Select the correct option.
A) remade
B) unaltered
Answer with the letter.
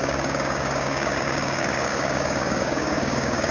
A